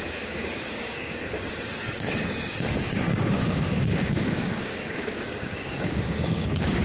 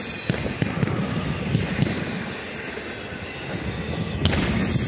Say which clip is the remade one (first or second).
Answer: first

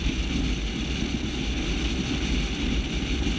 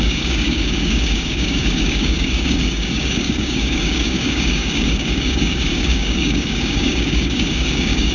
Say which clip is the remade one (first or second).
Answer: second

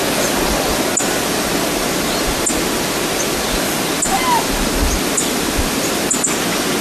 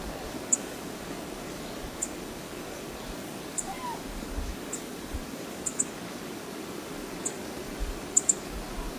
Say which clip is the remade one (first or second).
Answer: second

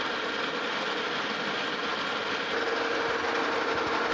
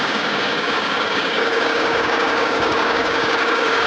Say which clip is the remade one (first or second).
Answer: second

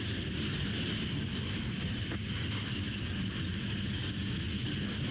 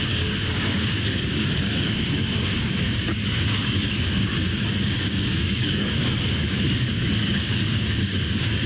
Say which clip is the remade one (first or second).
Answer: second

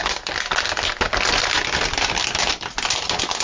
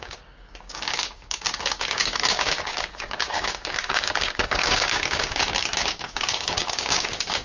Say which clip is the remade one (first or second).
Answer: second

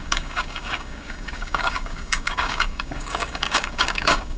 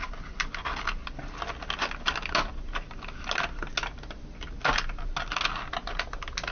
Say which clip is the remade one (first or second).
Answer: first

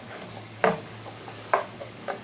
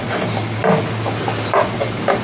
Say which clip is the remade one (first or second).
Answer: first